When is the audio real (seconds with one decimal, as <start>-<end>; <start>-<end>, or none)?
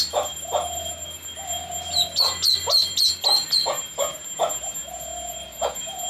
0.0-6.1